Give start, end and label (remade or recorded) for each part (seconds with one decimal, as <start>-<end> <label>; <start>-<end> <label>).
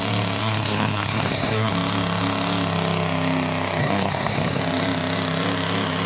0.0-0.4 recorded; 0.4-1.7 remade; 1.7-3.8 recorded; 3.8-4.6 remade; 4.6-6.1 recorded